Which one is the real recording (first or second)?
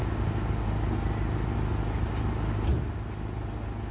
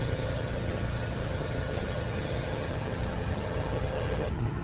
first